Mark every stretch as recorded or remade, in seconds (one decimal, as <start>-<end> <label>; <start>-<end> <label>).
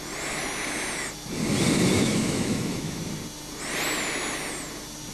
0.0-1.9 recorded; 1.9-3.0 remade; 3.0-5.1 recorded